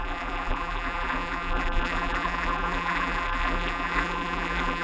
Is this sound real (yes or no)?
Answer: no